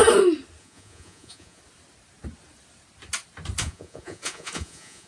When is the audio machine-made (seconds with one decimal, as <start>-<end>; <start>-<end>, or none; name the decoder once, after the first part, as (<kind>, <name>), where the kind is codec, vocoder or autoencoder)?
0.6-1.6 (vocoder, Vocos); 3.6-5.1